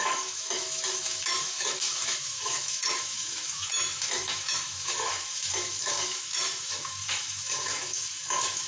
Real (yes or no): no